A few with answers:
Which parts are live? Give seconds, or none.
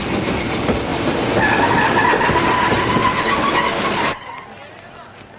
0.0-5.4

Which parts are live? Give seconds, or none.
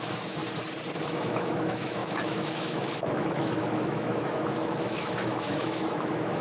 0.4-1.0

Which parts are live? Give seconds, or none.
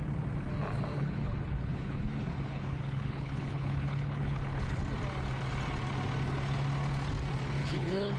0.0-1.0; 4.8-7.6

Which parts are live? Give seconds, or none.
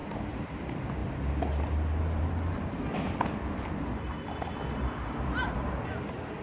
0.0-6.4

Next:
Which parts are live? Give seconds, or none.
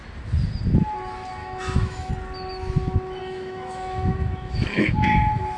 0.0-1.4; 2.1-3.2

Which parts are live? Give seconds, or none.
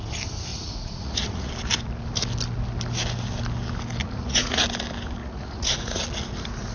0.0-0.5; 1.5-4.0; 4.6-5.2; 6.0-6.7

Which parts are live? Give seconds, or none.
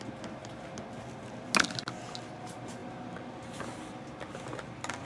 0.0-5.0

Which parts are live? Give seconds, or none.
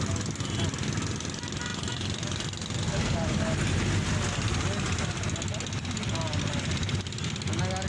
0.0-7.9